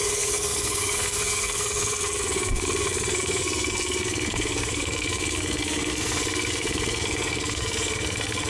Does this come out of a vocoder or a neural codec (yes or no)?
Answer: yes